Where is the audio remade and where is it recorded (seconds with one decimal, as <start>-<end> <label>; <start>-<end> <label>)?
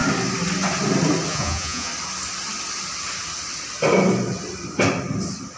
0.0-1.3 recorded; 1.3-1.9 remade; 1.9-5.6 recorded